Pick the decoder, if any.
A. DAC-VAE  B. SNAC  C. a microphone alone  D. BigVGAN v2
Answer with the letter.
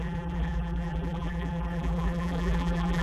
D